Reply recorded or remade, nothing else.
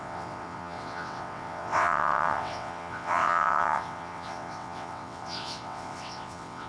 remade